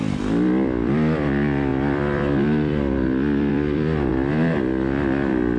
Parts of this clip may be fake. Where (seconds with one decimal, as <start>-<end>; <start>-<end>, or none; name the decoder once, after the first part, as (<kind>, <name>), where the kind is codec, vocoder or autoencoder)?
0.0-5.6 (vocoder, BigVGAN v2)